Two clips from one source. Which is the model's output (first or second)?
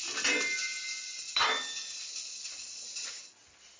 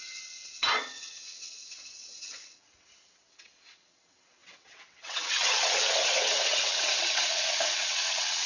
second